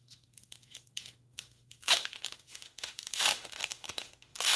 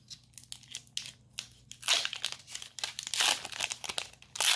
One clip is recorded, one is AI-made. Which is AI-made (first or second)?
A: first